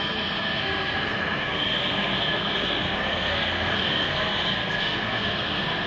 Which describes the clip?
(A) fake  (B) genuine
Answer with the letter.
A